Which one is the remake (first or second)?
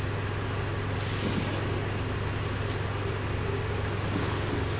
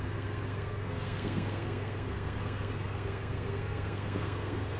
second